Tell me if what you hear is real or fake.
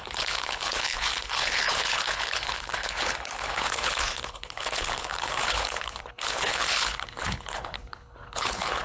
fake